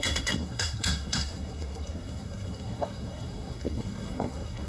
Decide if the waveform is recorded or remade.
remade